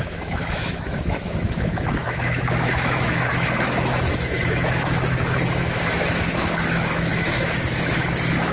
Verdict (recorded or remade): remade